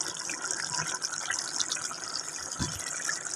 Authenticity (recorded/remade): recorded